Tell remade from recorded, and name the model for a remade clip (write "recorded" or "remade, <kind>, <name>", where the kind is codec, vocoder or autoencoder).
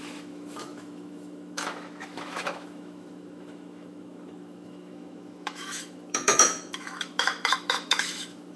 remade, autoencoder, DAC-VAE